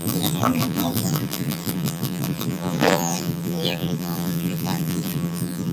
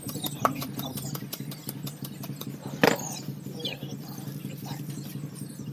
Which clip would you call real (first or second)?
second